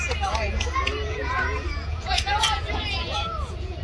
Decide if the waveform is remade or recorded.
remade